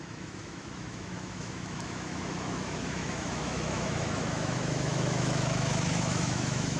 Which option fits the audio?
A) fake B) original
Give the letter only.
A